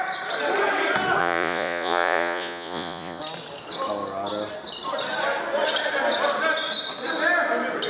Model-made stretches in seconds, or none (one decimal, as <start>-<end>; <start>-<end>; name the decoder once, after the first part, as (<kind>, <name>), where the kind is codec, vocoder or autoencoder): 1.2-3.2 (vocoder, Vocos)